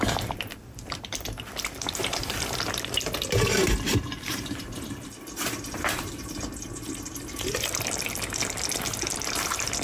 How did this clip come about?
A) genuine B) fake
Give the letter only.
B